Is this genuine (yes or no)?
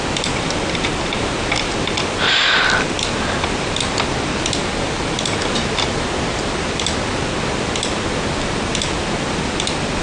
yes